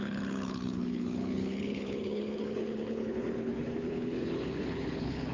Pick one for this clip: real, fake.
fake